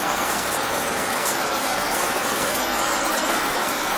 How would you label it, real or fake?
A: fake